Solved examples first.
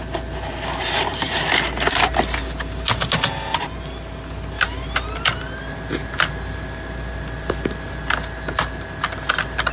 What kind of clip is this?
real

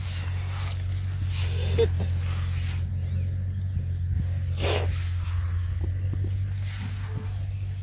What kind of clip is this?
real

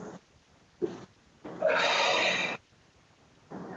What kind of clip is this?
real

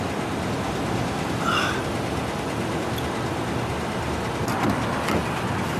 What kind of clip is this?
real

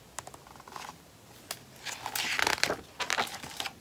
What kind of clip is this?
real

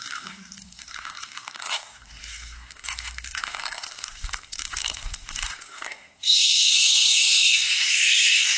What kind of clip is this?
fake